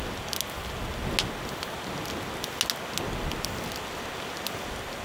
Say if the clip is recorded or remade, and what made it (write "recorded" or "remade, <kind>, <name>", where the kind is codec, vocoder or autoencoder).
recorded